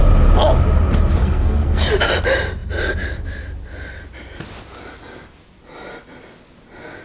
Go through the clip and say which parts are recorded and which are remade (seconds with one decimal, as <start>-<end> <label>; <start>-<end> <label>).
0.0-1.2 recorded; 1.2-1.8 remade; 1.8-7.0 recorded